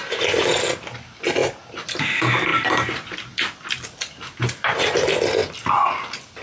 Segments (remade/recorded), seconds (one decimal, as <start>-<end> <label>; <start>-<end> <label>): 0.0-2.5 recorded; 2.5-4.8 remade; 4.8-6.4 recorded